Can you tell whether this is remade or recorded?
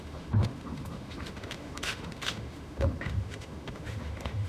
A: remade